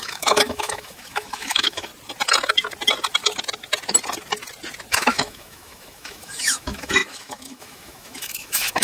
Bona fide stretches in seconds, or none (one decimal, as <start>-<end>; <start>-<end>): 1.9-4.9